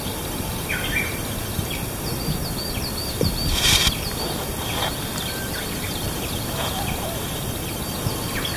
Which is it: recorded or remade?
remade